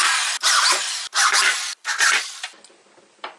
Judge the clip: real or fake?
fake